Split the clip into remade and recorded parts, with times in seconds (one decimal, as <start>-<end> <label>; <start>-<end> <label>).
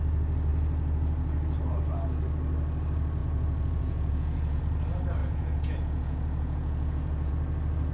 0.0-3.2 recorded; 3.2-4.6 remade; 4.6-5.2 recorded; 5.2-7.3 remade; 7.3-7.9 recorded